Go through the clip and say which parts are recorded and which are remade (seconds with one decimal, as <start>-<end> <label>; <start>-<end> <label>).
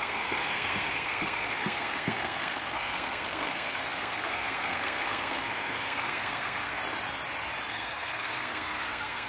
0.0-6.8 remade; 6.8-7.7 recorded; 7.7-9.3 remade